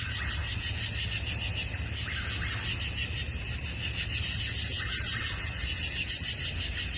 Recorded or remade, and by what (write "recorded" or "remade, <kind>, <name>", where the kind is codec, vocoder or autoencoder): recorded